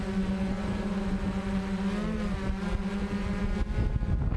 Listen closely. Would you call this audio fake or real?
real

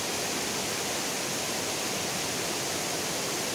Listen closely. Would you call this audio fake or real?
real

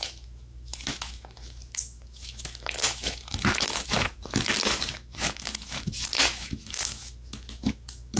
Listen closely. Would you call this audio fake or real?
fake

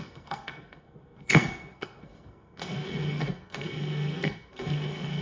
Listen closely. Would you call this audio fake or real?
fake